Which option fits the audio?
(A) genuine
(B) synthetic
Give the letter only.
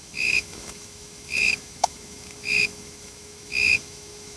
B